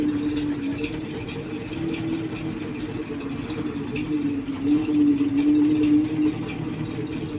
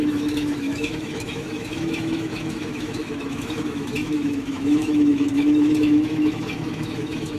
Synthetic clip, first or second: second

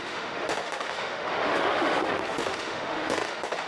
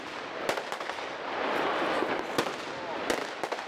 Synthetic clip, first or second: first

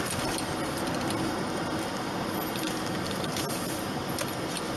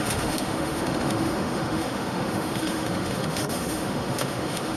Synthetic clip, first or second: second